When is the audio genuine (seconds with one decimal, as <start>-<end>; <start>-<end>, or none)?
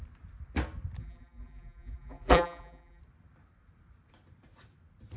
0.0-1.0; 3.0-5.2